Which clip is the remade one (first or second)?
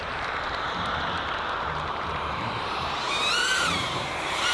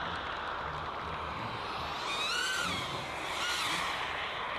first